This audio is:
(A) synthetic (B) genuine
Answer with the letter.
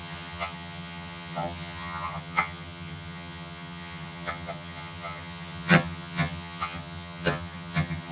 A